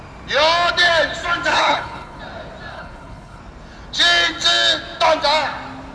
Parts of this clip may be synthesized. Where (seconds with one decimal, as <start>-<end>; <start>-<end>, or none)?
1.5-2.2; 2.7-3.4